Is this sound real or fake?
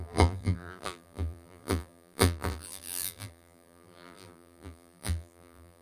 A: fake